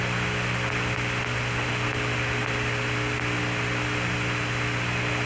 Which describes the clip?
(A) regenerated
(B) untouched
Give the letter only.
B